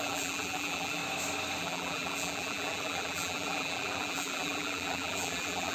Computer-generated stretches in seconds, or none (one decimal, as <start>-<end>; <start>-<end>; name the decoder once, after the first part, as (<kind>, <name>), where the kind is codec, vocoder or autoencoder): 0.0-1.0 (vocoder, BigVGAN v2); 1.6-5.7